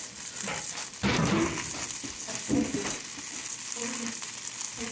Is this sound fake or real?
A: real